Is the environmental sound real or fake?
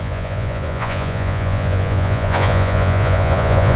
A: fake